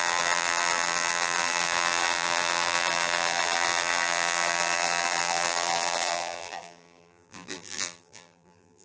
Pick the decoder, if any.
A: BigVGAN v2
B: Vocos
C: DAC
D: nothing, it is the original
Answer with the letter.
A